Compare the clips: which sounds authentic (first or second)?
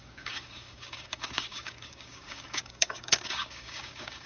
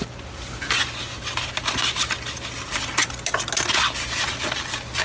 second